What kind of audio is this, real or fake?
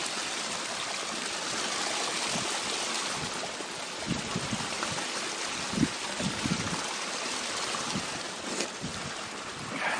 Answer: real